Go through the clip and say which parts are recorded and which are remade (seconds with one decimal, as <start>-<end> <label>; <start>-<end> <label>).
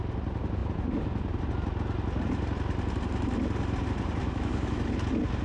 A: 0.0-4.2 recorded; 4.2-4.8 remade; 4.8-5.4 recorded